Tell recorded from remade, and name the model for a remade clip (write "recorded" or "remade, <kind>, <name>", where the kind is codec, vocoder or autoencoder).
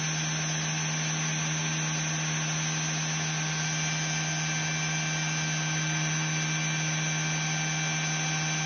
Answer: recorded